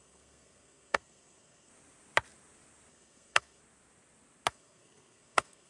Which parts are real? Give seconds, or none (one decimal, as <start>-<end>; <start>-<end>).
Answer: 1.7-2.9; 3.6-4.5